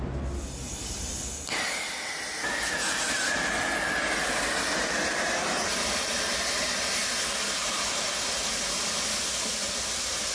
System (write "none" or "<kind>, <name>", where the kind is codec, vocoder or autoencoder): none